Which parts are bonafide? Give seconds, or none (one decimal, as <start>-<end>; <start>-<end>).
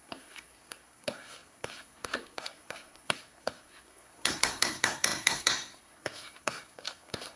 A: none